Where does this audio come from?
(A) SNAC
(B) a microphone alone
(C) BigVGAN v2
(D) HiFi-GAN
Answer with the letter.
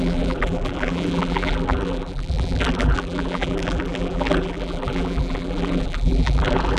C